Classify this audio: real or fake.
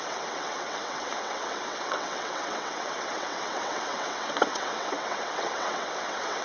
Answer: fake